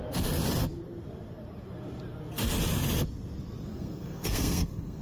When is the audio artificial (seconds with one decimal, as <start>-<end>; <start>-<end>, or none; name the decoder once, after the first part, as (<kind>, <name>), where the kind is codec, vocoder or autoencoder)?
3.7-5.0 (codec, SNAC)